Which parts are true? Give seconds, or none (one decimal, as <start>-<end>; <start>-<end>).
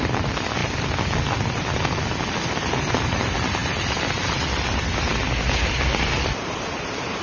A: 0.0-7.2